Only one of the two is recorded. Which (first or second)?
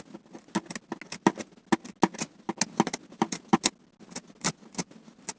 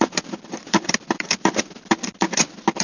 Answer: first